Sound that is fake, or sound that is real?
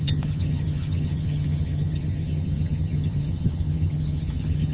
fake